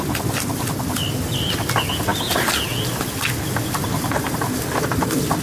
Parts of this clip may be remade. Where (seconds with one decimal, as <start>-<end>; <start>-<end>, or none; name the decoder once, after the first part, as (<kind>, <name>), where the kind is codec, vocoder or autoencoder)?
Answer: none